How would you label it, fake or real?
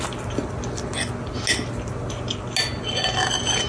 real